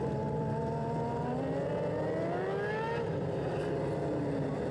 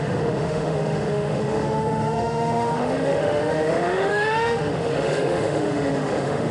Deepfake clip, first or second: second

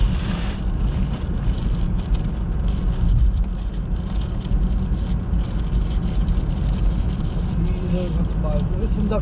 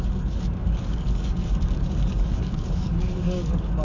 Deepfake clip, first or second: second